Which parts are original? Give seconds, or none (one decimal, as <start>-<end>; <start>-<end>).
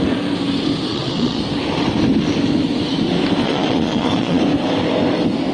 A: 0.0-0.9; 1.4-3.4; 4.4-5.5